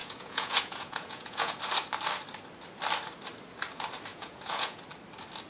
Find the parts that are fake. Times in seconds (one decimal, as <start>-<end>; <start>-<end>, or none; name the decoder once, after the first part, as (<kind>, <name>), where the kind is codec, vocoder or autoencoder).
0.0-1.6 (vocoder, Vocos); 4.1-4.8